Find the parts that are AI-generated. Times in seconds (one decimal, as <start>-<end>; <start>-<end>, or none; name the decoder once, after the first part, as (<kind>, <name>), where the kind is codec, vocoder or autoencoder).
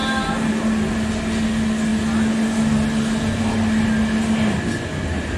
none